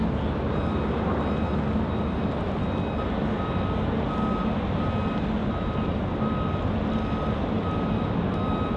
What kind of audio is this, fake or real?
real